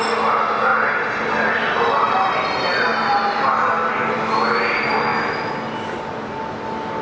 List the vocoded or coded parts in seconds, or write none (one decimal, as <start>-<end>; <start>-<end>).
none